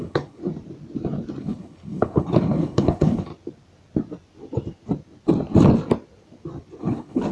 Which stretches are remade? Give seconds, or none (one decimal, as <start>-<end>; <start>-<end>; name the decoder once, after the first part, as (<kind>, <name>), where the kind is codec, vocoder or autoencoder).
0.0-0.4 (codec, HILCodec); 1.4-3.3; 6.8-7.3